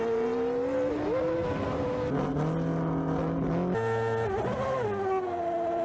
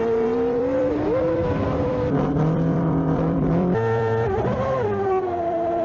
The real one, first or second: first